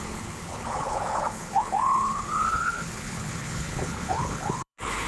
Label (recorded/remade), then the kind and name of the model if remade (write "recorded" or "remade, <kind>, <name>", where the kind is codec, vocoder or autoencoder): remade, codec, HILCodec